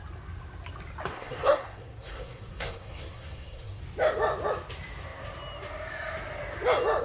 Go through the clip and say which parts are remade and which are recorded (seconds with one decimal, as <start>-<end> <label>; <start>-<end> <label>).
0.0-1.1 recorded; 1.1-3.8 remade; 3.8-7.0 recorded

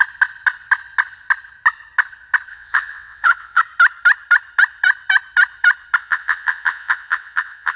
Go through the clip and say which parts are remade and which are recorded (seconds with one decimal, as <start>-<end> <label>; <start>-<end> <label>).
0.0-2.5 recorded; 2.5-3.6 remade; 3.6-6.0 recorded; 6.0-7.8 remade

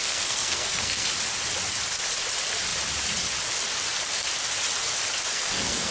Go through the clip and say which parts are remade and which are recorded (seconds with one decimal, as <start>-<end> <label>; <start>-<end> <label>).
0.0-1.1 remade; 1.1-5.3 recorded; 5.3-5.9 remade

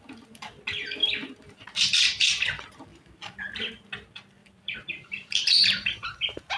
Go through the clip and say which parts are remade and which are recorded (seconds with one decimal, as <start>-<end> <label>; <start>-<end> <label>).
0.0-1.0 recorded; 1.0-2.3 remade; 2.3-4.4 recorded; 4.4-6.6 remade

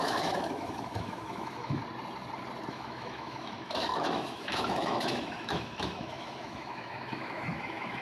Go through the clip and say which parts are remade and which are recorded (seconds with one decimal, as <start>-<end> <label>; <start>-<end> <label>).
0.0-1.8 remade; 1.8-2.7 recorded; 2.7-8.0 remade